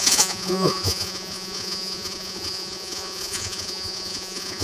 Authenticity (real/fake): fake